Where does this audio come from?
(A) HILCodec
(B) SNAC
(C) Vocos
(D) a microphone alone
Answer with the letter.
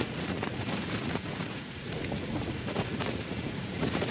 C